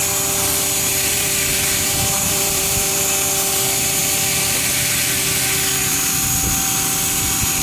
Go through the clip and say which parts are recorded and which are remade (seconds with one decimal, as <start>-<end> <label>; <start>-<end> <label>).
0.0-0.9 recorded; 0.9-3.0 remade; 3.0-5.8 recorded; 5.8-6.3 remade; 6.3-7.6 recorded